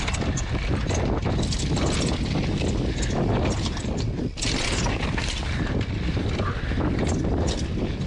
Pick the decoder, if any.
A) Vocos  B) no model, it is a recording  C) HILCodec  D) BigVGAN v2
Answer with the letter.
B